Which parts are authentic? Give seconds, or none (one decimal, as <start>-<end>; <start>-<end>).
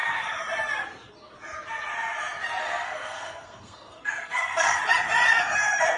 0.0-2.6; 4.8-6.0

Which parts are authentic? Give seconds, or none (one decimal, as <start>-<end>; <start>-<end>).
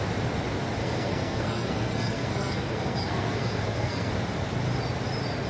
0.0-0.8; 4.1-5.5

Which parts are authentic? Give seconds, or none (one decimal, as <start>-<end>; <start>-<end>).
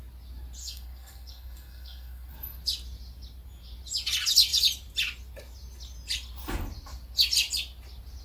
0.0-0.6; 2.3-8.2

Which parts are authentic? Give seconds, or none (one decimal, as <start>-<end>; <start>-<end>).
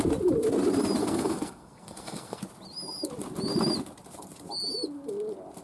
0.0-1.0; 2.4-5.6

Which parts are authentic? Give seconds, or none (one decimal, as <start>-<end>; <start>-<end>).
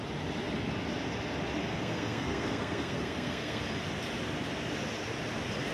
0.0-1.6; 3.6-5.7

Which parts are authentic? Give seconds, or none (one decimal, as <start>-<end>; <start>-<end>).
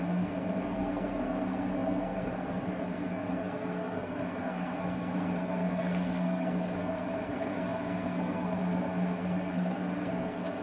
none